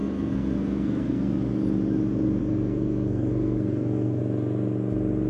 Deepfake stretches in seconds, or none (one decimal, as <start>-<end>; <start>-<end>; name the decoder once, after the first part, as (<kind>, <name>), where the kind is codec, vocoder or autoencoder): 0.0-1.4 (codec, SNAC); 2.4-4.2

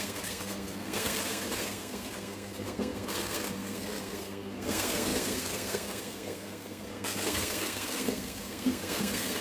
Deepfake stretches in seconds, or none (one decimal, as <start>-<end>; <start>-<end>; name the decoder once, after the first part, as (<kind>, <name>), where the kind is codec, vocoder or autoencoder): 0.0-9.4 (codec, SNAC)